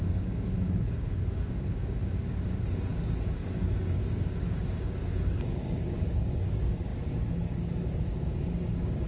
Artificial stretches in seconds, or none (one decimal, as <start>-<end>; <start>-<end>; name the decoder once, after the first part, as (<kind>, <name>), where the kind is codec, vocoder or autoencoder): 0.0-9.1 (codec, DAC)